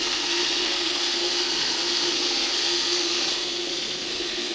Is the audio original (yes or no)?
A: no